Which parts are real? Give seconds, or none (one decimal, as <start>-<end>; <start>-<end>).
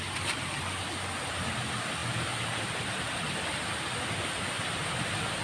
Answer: 0.0-2.0; 2.8-5.4